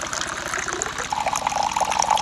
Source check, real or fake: real